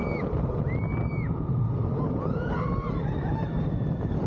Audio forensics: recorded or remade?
recorded